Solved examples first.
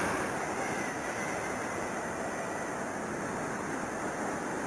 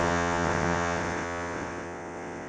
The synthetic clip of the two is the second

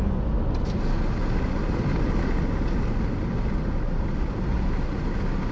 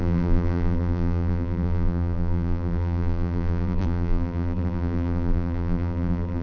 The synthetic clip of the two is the second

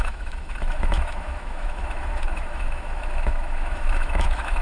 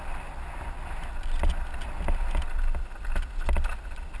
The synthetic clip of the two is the first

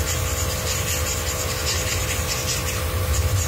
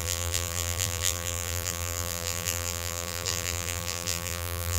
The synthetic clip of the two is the second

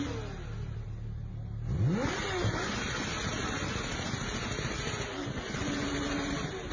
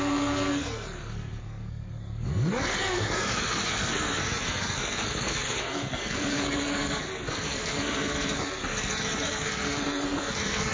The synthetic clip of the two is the second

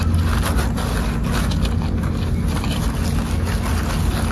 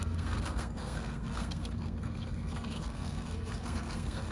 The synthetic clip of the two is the second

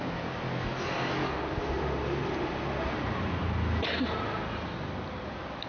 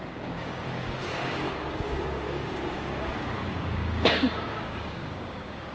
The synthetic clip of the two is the second